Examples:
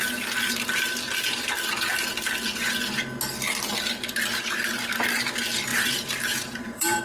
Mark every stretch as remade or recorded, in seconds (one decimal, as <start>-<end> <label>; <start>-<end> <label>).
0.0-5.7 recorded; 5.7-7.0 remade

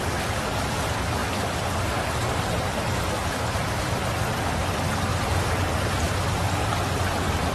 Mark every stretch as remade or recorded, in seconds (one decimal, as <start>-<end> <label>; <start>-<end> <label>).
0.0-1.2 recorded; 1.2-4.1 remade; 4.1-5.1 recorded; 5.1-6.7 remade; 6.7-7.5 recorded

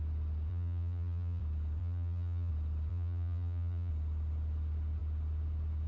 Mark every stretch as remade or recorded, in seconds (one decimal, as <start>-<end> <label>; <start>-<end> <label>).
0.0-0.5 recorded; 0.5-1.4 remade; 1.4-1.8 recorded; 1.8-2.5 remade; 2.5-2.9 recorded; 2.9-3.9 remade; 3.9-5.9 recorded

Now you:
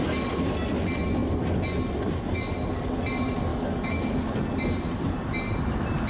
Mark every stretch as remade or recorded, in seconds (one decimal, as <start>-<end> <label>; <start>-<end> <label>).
0.0-3.5 recorded; 3.5-4.1 remade; 4.1-6.1 recorded

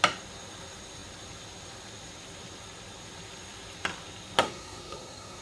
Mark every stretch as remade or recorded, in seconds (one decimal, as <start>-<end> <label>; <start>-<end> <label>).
0.0-4.4 recorded; 4.4-5.4 remade

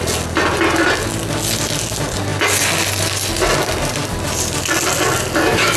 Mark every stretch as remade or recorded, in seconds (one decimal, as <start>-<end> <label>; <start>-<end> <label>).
0.0-5.8 recorded